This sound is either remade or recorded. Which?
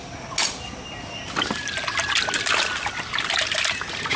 recorded